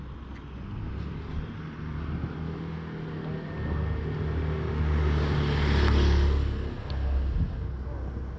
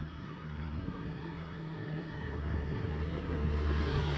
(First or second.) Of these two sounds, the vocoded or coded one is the second